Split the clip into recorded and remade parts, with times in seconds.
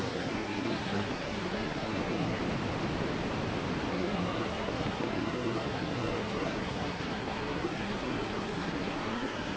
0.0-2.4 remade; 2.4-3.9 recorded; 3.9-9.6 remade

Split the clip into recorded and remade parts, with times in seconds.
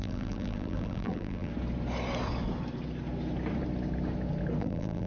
0.0-1.5 remade; 1.5-4.6 recorded; 4.6-5.1 remade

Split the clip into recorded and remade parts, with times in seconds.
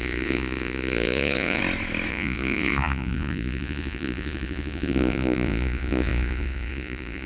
0.0-1.6 remade; 1.6-2.1 recorded; 2.1-7.3 remade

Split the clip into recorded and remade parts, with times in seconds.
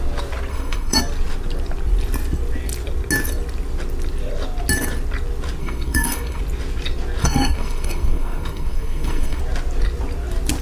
0.0-0.5 recorded; 0.5-1.0 remade; 1.0-5.6 recorded; 5.6-6.4 remade; 6.4-7.2 recorded; 7.2-9.4 remade; 9.4-10.6 recorded